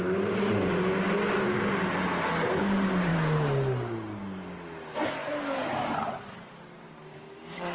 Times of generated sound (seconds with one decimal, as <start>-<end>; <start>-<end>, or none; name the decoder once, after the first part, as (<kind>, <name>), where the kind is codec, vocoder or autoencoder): none